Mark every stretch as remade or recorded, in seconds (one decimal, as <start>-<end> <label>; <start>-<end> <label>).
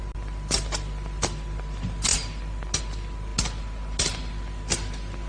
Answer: 0.0-5.3 recorded